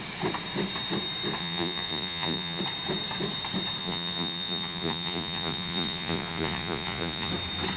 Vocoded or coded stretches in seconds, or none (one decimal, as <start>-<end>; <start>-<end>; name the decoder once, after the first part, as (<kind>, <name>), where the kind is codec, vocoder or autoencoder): 1.4-2.6 (vocoder, Vocos); 3.8-7.3

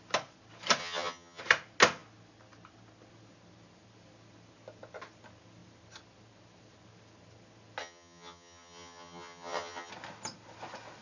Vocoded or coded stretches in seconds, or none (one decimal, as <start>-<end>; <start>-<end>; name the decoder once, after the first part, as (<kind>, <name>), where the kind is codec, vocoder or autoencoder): 0.8-1.4 (vocoder, HiFi-GAN); 7.8-9.9